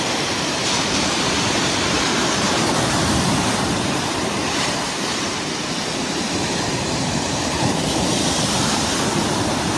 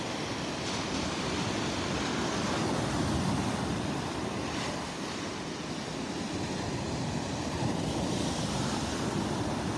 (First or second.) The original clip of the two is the second